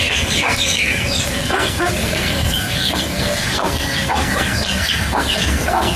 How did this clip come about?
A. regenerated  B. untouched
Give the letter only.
A